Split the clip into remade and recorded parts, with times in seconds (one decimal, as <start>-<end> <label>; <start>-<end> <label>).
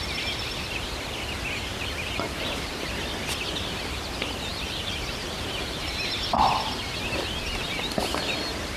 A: 0.0-1.7 recorded; 1.7-2.9 remade; 2.9-4.5 recorded; 4.5-6.8 remade; 6.8-8.8 recorded